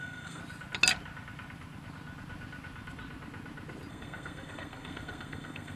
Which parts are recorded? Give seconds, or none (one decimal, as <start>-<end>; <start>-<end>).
0.4-3.9